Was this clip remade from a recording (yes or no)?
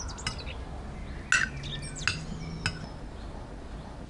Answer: no